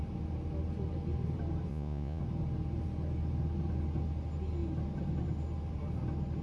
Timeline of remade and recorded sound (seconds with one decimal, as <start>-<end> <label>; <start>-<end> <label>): 0.0-1.7 recorded; 1.7-2.2 remade; 2.2-6.4 recorded